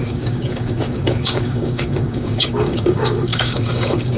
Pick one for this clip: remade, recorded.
remade